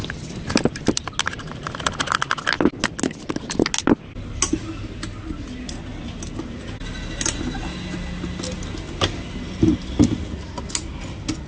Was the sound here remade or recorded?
recorded